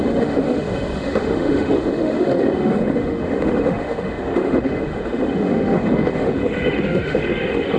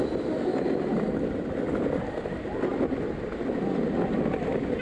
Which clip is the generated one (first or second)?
first